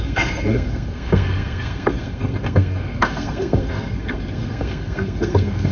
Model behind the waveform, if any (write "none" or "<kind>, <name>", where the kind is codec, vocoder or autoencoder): codec, SNAC